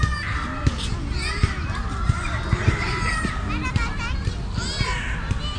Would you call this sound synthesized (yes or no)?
no